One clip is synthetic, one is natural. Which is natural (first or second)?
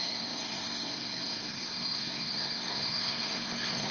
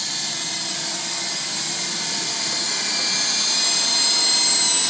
second